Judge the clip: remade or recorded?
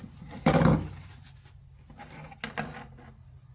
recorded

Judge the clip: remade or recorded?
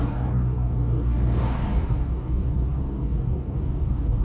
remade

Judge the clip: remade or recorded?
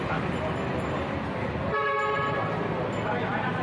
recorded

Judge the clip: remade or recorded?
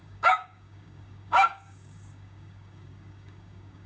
remade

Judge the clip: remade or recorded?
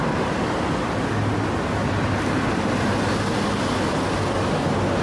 recorded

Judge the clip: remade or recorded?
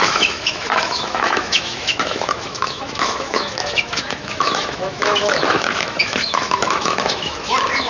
remade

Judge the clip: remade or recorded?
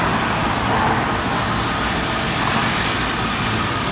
recorded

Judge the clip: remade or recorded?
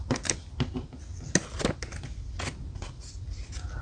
recorded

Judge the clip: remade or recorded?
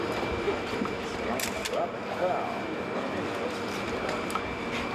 recorded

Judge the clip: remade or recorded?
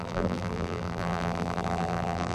remade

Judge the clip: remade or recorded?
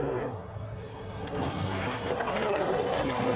remade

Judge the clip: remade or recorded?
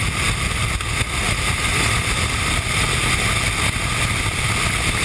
recorded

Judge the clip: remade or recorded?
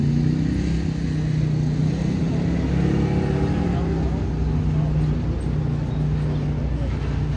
recorded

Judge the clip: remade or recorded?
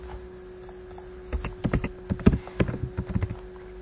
recorded